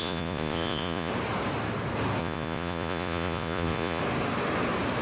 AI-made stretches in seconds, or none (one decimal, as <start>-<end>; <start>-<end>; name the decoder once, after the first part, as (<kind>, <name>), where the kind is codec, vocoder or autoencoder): 0.0-1.1 (vocoder, Vocos); 2.2-4.0